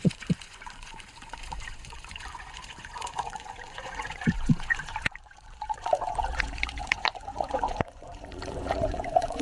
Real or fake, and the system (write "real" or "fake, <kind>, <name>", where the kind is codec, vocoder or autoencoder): fake, vocoder, Vocos